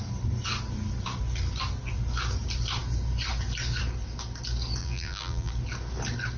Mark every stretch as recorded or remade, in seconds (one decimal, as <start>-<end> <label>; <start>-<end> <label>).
0.0-4.8 recorded; 4.8-5.5 remade; 5.5-6.4 recorded